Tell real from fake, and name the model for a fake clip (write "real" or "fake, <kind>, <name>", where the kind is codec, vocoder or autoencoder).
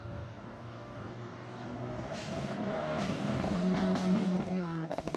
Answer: fake, codec, DAC